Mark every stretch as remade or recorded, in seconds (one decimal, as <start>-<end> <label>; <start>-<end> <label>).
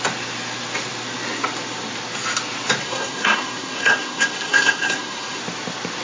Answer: 0.0-2.8 recorded; 2.8-5.4 remade; 5.4-6.0 recorded